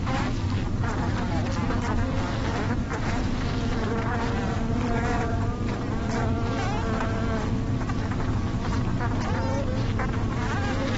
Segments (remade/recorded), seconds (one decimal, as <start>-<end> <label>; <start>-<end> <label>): 0.0-2.9 recorded; 2.9-3.9 remade; 3.9-11.0 recorded